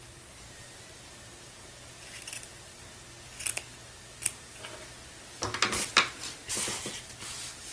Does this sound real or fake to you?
real